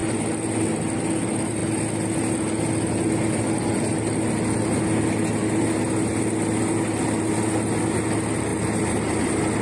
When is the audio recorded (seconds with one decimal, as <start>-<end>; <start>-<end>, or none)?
0.0-9.6